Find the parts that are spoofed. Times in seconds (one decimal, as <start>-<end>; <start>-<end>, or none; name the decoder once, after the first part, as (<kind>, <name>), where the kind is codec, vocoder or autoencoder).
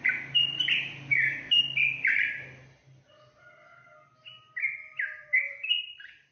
1.1-1.6 (codec, DAC)